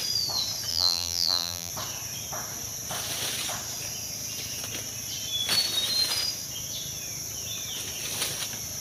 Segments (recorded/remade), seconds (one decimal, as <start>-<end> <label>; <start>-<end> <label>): 0.0-0.7 recorded; 0.7-1.7 remade; 1.7-8.8 recorded